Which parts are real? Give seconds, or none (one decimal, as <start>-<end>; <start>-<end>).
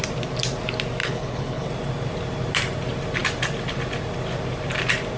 0.0-1.0; 1.7-5.2